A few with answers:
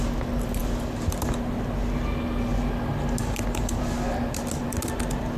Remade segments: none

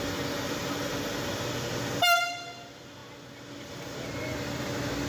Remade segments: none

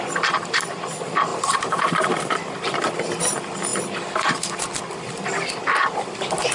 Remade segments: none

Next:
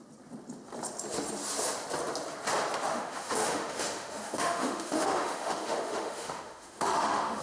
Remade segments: 2.9-7.4 (autoencoder, DAC-VAE)

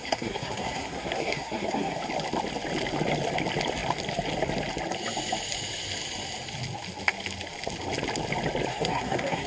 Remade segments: 0.0-2.0 (codec, SNAC); 8.7-9.5